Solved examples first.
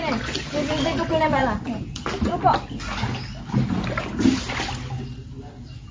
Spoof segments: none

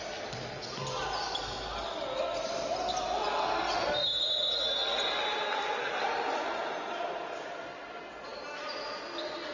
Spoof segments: none

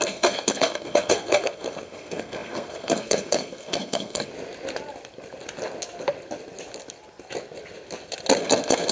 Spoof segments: 0.0-4.3 (codec, SNAC); 8.4-8.9

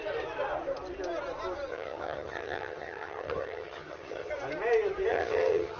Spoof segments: 1.7-4.3 (vocoder, HiFi-GAN); 5.1-5.8

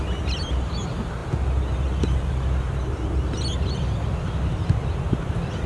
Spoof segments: none